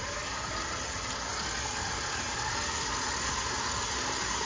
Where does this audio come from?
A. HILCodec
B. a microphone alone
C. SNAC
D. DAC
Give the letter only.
B